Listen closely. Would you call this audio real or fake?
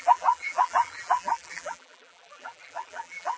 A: fake